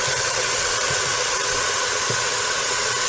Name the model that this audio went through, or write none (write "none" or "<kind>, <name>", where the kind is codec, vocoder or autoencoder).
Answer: vocoder, WaveNeXt